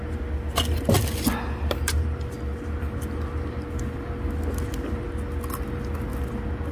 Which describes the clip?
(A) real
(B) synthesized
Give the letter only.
A